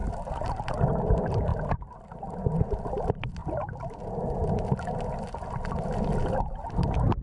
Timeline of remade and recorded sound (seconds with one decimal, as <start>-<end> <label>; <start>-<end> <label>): 0.0-7.2 recorded